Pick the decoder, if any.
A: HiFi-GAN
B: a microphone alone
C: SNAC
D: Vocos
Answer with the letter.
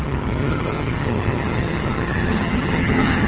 A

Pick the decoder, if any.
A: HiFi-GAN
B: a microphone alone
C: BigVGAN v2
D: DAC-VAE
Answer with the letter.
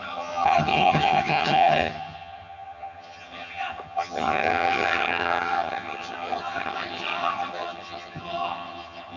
A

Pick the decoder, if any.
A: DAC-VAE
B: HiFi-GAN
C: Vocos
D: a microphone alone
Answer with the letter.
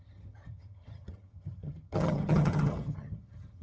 B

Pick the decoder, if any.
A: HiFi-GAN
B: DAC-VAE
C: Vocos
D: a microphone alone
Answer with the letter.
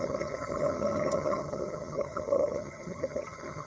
A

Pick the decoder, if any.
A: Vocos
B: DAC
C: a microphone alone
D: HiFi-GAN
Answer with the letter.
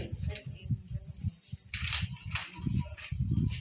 C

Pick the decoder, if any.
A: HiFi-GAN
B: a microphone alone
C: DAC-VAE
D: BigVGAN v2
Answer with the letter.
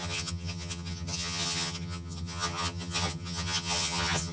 A